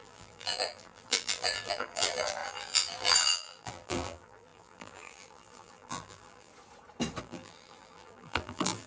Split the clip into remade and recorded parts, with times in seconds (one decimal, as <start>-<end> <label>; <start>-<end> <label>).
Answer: 0.0-6.5 remade; 6.5-7.2 recorded; 7.2-8.9 remade